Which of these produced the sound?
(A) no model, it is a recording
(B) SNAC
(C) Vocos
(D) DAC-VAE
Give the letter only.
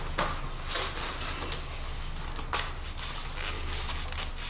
A